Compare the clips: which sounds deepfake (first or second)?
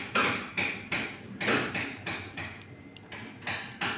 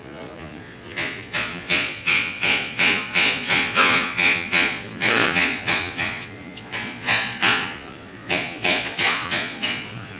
second